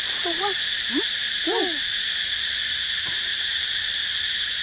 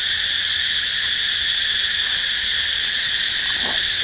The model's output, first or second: first